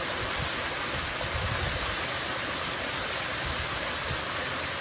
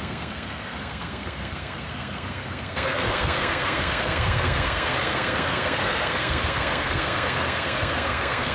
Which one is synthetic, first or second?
second